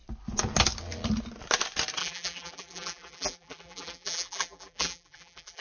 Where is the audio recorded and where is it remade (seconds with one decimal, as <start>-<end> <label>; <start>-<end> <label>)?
0.0-2.0 recorded; 2.0-5.6 remade